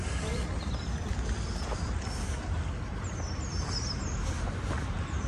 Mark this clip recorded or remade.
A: recorded